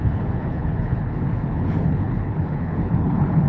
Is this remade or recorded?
remade